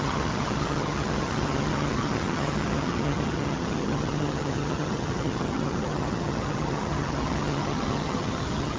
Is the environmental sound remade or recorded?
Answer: remade